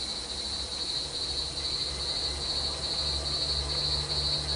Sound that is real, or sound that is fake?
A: real